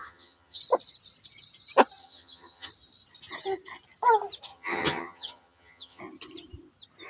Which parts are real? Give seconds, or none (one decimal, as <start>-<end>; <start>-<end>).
0.6-2.0; 2.7-4.5; 6.0-7.1